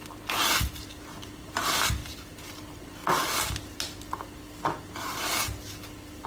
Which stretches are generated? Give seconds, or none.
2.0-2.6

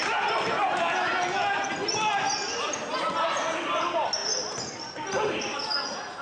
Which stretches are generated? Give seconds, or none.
none

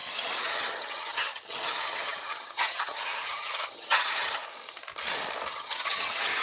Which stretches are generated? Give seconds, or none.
0.0-4.4; 5.5-6.4

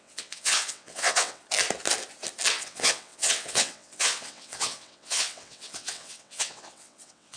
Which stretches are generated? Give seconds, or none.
0.0-1.4; 2.5-7.4

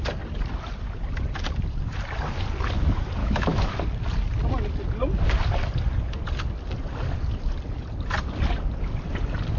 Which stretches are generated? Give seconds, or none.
3.2-3.8

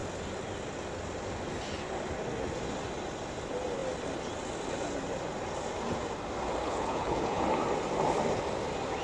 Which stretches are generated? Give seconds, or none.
6.6-7.4

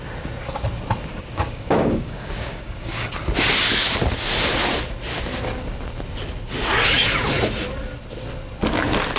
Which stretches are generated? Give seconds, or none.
1.1-3.1